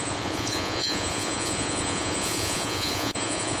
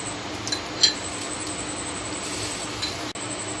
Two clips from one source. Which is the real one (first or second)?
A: second